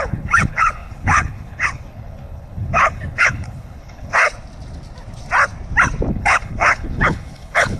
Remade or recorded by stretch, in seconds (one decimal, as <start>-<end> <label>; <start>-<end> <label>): 0.0-4.2 remade; 4.2-6.1 recorded; 6.1-7.8 remade